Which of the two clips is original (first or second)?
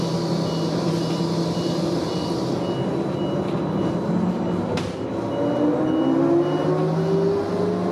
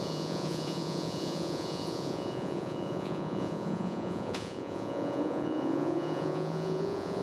first